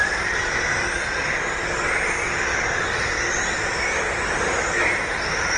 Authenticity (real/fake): real